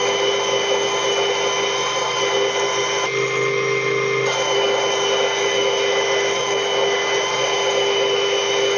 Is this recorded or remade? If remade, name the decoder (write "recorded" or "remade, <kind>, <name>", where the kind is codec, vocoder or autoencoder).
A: recorded